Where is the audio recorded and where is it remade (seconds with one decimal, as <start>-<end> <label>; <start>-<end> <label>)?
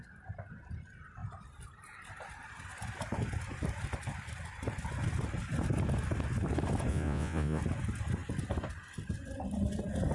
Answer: 0.0-6.9 recorded; 6.9-7.6 remade; 7.6-10.1 recorded